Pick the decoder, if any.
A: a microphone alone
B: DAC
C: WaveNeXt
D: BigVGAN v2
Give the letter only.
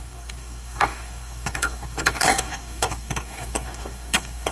B